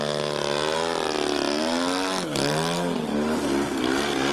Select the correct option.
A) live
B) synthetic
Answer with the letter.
A